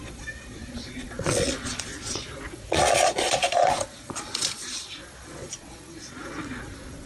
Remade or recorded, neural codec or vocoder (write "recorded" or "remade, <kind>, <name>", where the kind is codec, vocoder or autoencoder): remade, vocoder, Vocos